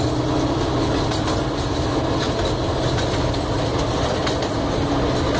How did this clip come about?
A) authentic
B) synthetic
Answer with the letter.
A